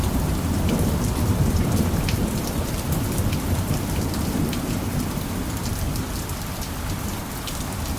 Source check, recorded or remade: remade